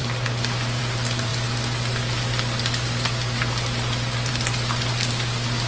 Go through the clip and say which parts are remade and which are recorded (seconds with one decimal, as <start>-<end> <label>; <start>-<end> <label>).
0.0-5.7 recorded